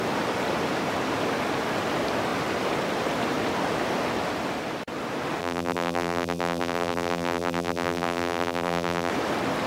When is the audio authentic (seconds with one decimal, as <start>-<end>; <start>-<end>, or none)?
0.0-5.4; 9.1-9.7